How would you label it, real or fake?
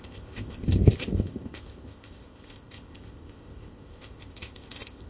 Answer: fake